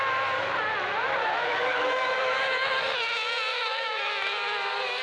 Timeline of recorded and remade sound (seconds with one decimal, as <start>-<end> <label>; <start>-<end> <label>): 0.0-1.2 recorded; 1.2-2.2 remade; 2.2-3.5 recorded; 3.5-4.1 remade; 4.1-5.0 recorded